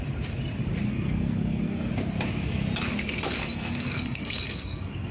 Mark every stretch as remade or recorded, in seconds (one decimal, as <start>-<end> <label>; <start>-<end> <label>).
0.0-0.9 recorded; 0.9-1.9 remade; 1.9-3.4 recorded; 3.4-5.1 remade

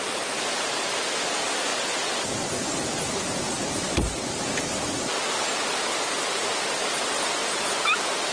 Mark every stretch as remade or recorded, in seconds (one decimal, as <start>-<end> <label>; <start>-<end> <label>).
0.0-8.3 recorded

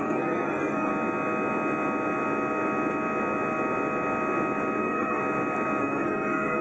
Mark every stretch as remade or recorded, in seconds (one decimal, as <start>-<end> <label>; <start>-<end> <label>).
0.0-0.9 remade; 0.9-4.8 recorded; 4.8-5.2 remade; 5.2-5.8 recorded; 5.8-6.6 remade